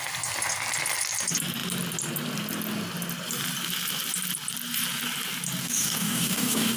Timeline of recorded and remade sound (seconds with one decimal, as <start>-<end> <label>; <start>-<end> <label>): 0.0-5.6 recorded; 5.6-6.8 remade